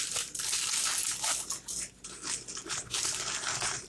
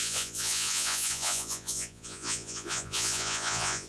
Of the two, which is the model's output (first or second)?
second